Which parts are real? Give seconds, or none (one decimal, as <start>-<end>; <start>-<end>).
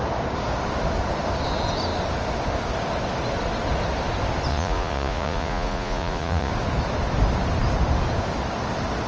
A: 0.0-4.5; 6.5-9.1